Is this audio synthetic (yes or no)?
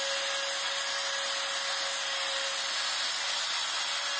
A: no